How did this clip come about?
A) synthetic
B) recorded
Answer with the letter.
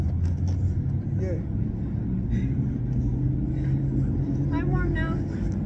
B